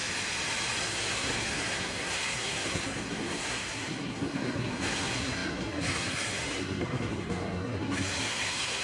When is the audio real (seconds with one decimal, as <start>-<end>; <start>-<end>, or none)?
0.0-0.8